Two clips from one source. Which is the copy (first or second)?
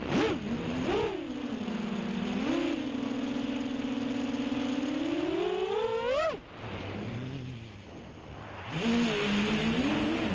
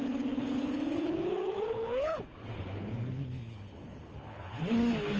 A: second